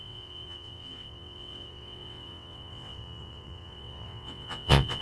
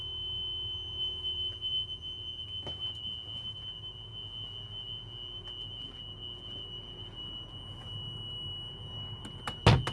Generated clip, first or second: first